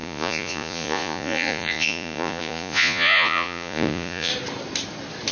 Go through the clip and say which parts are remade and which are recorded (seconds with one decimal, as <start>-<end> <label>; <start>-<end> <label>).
0.0-4.3 remade; 4.3-5.3 recorded